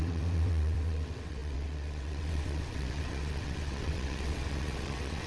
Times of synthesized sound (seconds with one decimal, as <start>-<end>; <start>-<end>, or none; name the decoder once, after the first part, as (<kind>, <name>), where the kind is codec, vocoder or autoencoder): 0.0-5.3 (vocoder, WaveNeXt)